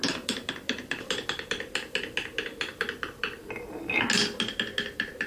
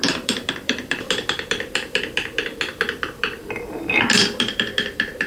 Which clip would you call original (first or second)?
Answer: first